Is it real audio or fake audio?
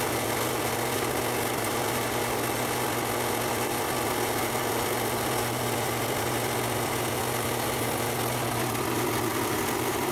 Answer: real